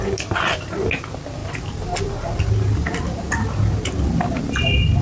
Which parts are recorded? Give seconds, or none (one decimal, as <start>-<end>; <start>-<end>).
0.0-5.0